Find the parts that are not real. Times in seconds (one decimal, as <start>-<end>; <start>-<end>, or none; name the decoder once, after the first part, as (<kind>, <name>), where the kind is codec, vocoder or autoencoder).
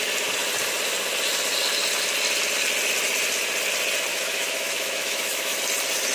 4.1-5.6 (autoencoder, DAC-VAE)